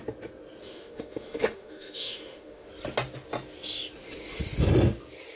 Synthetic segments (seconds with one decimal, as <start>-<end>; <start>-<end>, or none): 0.6-2.7